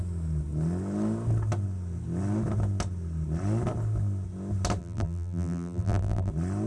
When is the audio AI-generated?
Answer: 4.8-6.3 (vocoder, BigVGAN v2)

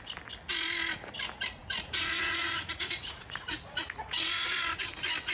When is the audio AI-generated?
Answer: 1.6-4.8 (vocoder, Vocos)